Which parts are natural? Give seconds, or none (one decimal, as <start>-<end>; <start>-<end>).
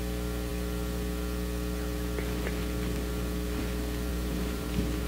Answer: 0.0-4.1